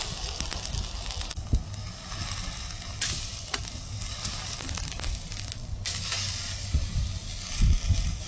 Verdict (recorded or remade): recorded